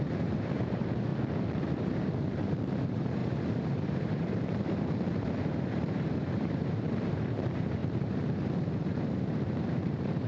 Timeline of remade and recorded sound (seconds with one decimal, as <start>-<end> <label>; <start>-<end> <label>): 0.0-1.1 remade; 1.1-1.6 recorded; 1.6-10.3 remade